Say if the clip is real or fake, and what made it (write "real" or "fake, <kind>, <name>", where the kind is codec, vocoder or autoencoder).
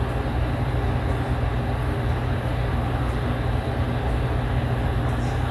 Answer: real